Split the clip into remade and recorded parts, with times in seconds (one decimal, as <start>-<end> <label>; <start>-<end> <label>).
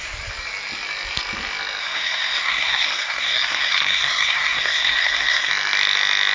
0.0-1.8 recorded; 1.8-5.5 remade; 5.5-6.3 recorded